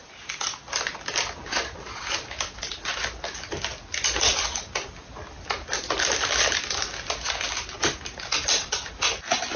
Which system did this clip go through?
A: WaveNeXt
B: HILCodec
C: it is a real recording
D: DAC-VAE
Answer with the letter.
C